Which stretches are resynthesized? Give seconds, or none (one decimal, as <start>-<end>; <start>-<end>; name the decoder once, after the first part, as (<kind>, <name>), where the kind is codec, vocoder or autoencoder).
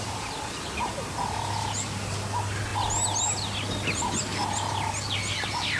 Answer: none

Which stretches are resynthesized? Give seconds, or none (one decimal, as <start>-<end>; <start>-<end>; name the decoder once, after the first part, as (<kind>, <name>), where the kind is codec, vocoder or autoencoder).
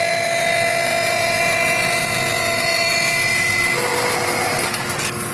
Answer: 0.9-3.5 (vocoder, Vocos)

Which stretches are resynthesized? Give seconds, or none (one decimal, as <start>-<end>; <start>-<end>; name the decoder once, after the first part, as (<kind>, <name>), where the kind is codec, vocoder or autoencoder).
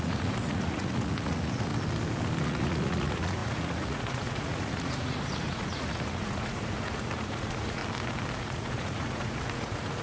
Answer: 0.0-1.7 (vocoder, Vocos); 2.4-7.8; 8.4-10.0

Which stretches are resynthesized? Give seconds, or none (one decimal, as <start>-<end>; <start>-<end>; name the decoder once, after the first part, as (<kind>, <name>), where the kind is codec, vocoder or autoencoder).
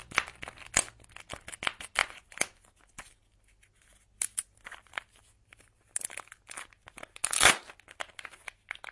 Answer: 2.0-2.7 (vocoder, Vocos)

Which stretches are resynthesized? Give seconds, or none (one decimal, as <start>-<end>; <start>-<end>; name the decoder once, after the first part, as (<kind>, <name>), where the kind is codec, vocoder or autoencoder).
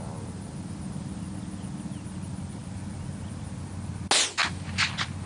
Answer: none